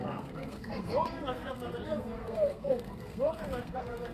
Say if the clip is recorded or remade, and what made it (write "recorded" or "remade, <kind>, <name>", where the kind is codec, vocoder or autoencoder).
remade, codec, SNAC